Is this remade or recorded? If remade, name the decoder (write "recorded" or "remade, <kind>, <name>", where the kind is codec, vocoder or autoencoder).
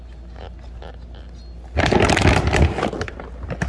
recorded